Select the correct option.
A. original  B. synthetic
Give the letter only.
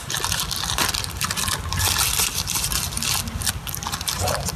A